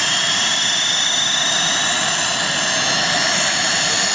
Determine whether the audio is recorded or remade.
recorded